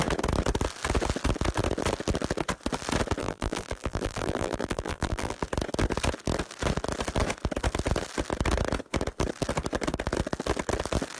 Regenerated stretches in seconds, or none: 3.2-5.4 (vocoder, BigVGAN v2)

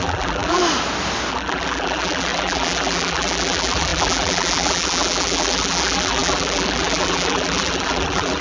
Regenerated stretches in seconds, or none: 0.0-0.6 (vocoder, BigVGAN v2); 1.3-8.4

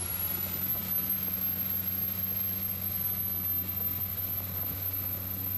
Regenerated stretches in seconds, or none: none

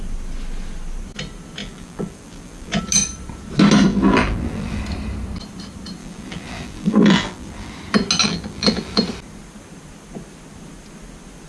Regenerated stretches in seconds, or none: 1.6-2.8 (vocoder, BigVGAN v2); 3.9-4.8; 6.0-7.7; 8.2-9.0

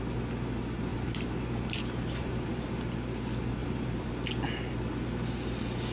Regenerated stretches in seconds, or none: 0.9-2.6 (vocoder, BigVGAN v2); 3.6-4.1

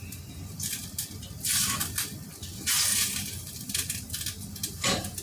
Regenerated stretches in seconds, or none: 2.9-4.2 (vocoder, BigVGAN v2)

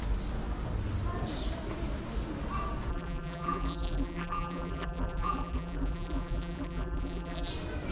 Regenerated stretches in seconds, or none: 2.9-7.5 (vocoder, BigVGAN v2)